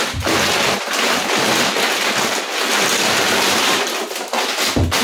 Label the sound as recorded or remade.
recorded